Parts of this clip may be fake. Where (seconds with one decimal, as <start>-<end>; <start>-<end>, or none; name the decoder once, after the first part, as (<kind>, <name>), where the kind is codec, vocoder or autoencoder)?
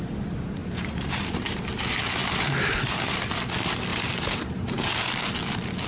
0.6-1.6 (vocoder, BigVGAN v2); 2.2-3.3; 3.9-4.9